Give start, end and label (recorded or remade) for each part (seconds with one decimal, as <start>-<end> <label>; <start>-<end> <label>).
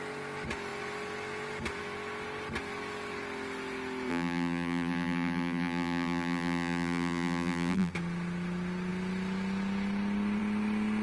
0.0-4.1 recorded; 4.1-7.9 remade; 7.9-11.0 recorded